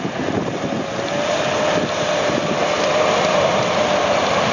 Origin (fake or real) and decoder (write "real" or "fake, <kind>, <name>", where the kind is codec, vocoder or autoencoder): real